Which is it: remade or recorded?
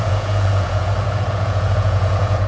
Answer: remade